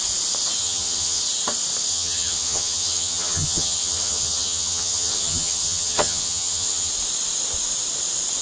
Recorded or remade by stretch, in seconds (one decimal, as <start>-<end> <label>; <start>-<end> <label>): 0.0-0.6 recorded; 0.6-1.2 remade; 1.2-1.9 recorded; 1.9-6.9 remade; 6.9-8.4 recorded